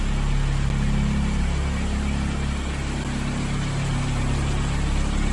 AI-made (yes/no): no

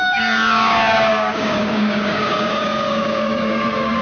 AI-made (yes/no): yes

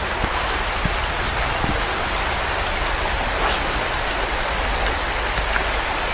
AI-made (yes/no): no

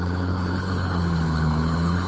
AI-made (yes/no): yes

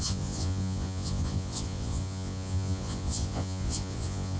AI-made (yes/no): yes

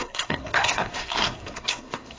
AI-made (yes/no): yes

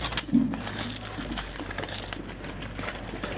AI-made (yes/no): no